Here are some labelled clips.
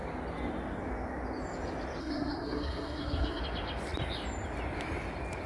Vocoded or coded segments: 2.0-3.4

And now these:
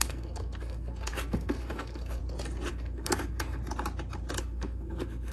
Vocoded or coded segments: 0.0-2.2; 2.7-3.6; 4.4-5.3

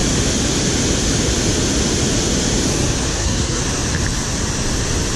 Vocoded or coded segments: 3.1-3.6

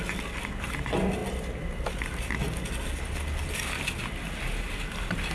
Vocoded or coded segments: none